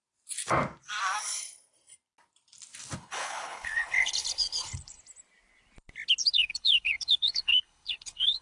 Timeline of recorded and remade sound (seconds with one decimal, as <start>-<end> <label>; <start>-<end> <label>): 0.0-3.0 recorded; 3.0-5.0 remade; 5.0-6.3 recorded; 6.3-8.4 remade

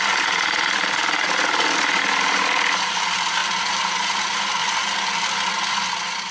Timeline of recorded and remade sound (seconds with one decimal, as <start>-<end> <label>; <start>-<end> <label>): 0.0-6.3 recorded